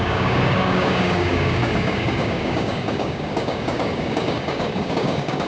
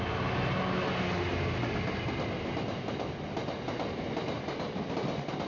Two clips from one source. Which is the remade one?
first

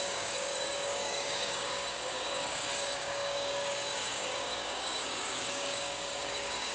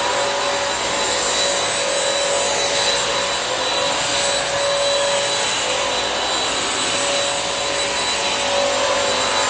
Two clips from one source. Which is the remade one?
first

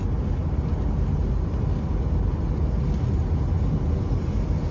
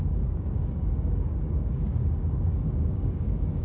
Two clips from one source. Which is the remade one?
second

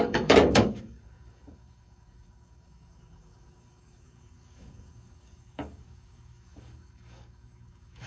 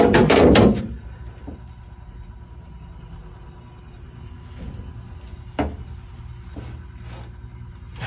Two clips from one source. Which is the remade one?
first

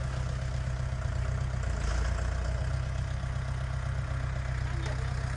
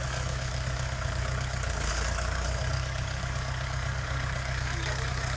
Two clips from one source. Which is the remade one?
second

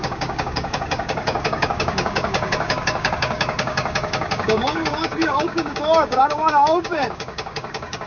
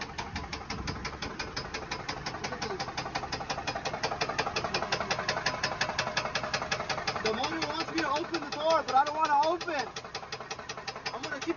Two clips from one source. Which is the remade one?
first